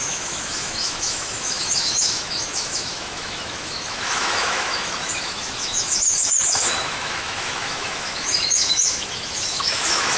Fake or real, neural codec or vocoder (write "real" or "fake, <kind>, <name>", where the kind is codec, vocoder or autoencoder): fake, autoencoder, DAC-VAE